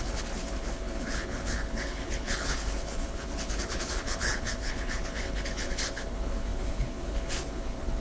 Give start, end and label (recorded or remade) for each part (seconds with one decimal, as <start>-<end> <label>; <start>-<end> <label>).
0.0-8.0 remade